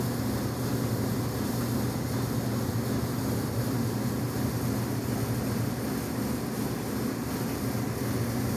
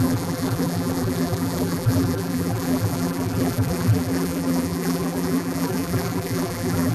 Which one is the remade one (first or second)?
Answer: second